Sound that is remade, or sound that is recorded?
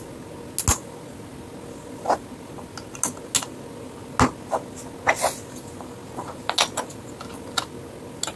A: recorded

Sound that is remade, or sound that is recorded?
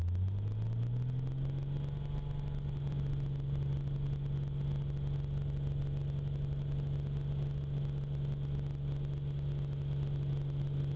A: recorded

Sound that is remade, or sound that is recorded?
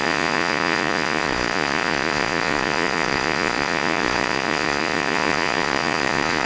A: remade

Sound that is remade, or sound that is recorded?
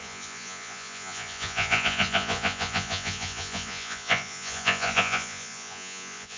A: remade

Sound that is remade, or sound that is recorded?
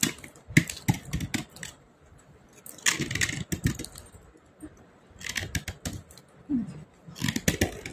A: recorded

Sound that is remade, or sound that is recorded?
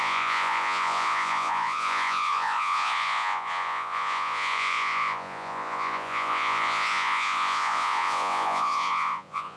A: remade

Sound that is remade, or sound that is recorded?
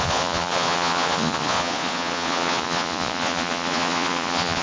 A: remade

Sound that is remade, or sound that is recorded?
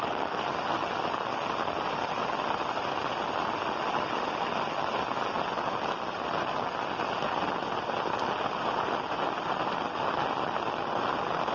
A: recorded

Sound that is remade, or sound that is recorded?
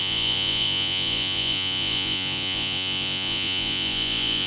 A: remade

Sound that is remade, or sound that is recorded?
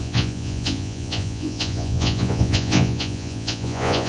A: remade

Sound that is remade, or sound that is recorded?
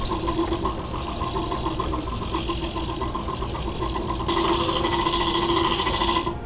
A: recorded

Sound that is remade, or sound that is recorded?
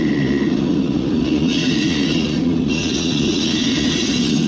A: remade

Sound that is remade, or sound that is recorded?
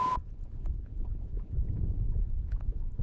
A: remade